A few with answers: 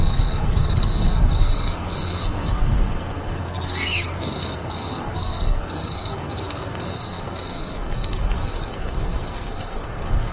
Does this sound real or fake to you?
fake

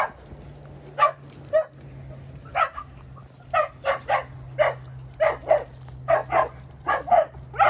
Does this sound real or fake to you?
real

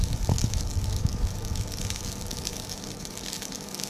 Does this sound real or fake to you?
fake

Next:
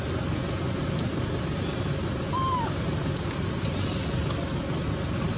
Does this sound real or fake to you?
real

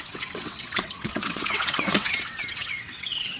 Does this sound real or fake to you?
fake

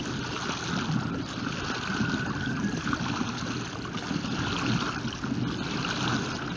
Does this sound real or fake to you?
real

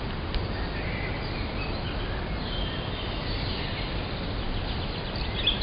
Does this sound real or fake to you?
real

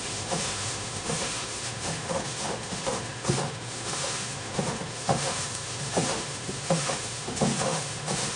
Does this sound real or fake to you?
fake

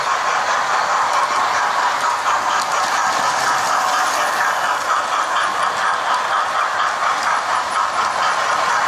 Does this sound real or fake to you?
real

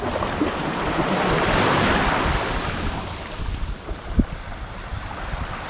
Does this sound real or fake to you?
real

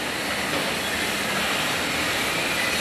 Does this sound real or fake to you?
real